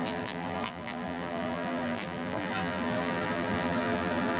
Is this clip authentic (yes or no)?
no